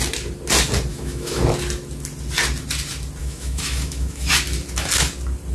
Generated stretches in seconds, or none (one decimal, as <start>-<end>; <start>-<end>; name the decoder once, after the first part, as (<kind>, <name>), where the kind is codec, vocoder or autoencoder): 0.9-1.4 (autoencoder, DAC-VAE); 3.2-4.3